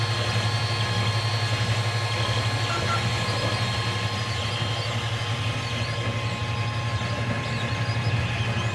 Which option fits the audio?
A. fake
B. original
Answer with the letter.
B